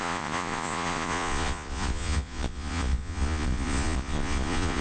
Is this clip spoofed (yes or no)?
yes